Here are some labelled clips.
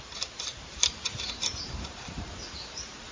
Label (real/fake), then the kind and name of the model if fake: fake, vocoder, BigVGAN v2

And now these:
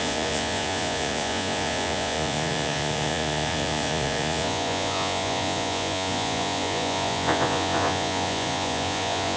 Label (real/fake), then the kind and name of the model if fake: fake, vocoder, Vocos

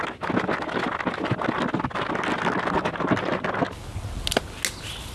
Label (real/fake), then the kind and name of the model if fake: real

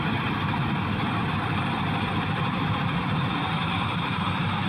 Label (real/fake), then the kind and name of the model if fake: fake, vocoder, BigVGAN v2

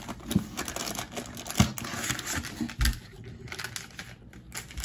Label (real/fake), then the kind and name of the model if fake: real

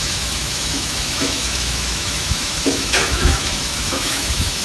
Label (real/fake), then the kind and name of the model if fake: fake, autoencoder, DAC-VAE